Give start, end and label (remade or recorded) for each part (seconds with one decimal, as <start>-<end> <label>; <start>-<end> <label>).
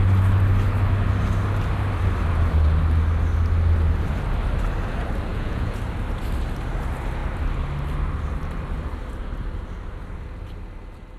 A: 0.0-5.3 recorded; 5.3-5.8 remade; 5.8-11.2 recorded